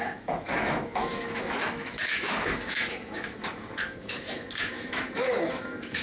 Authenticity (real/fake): fake